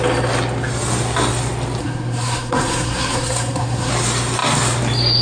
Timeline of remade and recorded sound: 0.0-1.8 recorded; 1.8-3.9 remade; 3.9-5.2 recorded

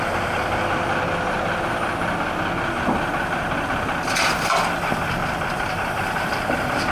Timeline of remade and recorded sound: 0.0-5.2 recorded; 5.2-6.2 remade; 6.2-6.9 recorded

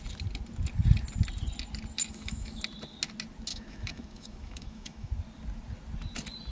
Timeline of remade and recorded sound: 0.0-2.0 recorded; 2.0-2.6 remade; 2.6-3.5 recorded; 3.5-5.1 remade; 5.1-6.5 recorded

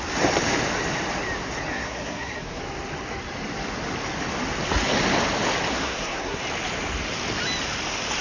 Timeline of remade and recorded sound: 0.0-1.7 recorded; 1.7-2.6 remade; 2.6-5.7 recorded; 5.7-6.4 remade; 6.4-8.2 recorded

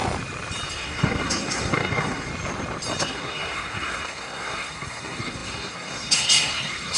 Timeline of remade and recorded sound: 0.0-0.7 recorded; 0.7-2.3 remade; 2.3-3.0 recorded; 3.0-7.0 remade

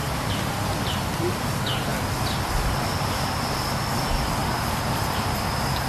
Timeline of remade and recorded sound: 0.0-1.3 remade; 1.3-1.9 recorded; 1.9-3.5 remade; 3.5-4.4 recorded; 4.4-5.3 remade; 5.3-5.9 recorded